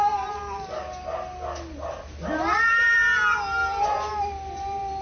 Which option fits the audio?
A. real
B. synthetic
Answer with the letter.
A